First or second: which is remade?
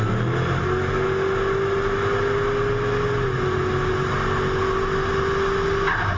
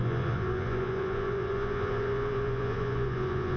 second